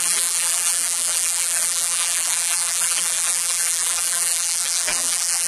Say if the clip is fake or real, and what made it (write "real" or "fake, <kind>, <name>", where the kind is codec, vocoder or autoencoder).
fake, vocoder, BigVGAN v2